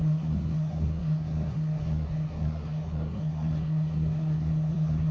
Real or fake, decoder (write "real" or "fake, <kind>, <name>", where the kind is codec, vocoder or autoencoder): fake, codec, SNAC